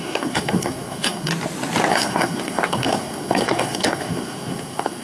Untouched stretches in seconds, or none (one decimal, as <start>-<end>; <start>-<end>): 1.3-1.9